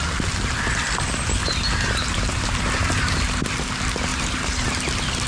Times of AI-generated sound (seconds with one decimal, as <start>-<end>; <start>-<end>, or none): 1.4-3.2; 4.1-4.7